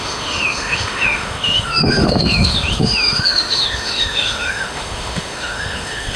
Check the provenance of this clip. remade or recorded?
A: remade